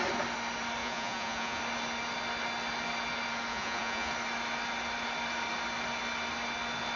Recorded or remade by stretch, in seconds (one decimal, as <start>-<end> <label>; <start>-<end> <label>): 0.0-0.8 recorded; 0.8-1.6 remade; 1.6-3.5 recorded; 3.5-4.1 remade; 4.1-7.0 recorded